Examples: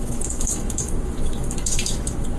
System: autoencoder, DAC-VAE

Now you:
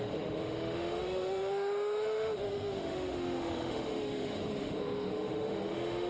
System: autoencoder, DAC-VAE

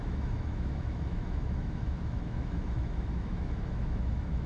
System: autoencoder, DAC-VAE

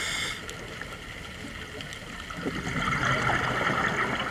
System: none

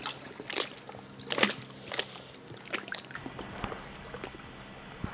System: none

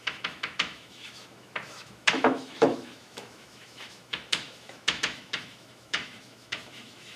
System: autoencoder, DAC-VAE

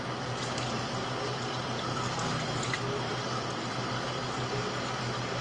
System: none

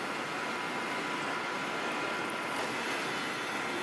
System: none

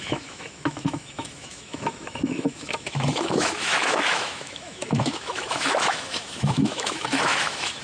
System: autoencoder, DAC-VAE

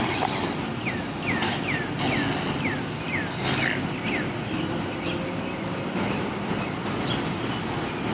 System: none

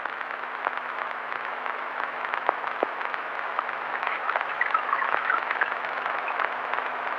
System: autoencoder, DAC-VAE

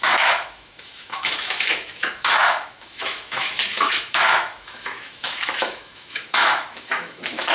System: autoencoder, DAC-VAE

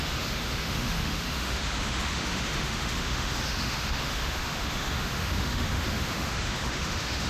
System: autoencoder, DAC-VAE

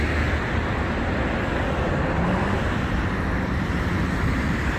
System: none